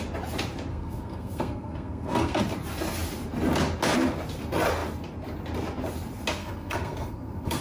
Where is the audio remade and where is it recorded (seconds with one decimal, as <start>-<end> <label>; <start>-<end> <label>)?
0.0-0.7 recorded; 0.7-2.4 remade; 2.4-6.4 recorded; 6.4-7.6 remade